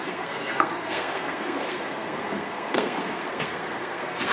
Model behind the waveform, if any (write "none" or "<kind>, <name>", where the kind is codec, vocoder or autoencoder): codec, SNAC